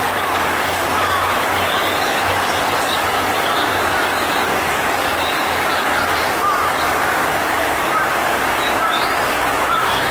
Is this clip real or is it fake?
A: fake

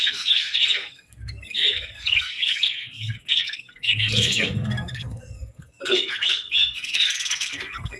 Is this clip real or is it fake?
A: fake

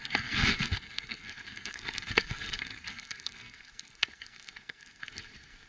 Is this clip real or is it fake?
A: fake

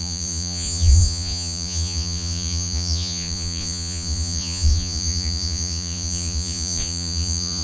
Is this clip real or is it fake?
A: fake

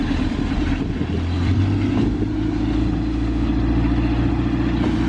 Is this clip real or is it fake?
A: fake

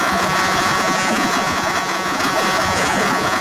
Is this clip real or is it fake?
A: fake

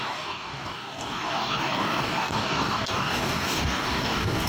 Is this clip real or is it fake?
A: fake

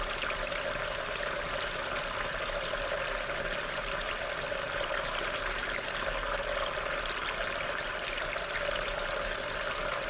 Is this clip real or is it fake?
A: real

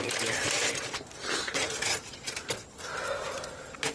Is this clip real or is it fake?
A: real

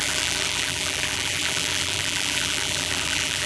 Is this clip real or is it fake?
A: fake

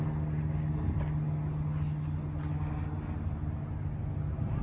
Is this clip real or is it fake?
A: real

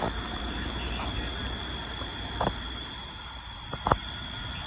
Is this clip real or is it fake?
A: fake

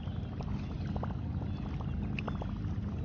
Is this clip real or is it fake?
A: real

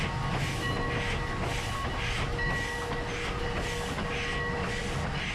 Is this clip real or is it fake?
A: real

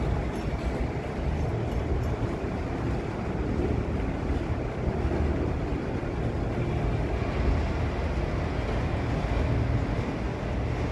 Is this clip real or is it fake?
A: real